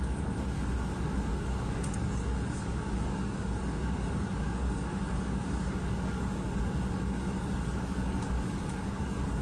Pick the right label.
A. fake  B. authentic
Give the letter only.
A